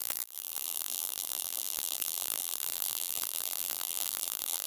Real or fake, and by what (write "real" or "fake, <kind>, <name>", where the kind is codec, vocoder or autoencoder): fake, vocoder, BigVGAN v2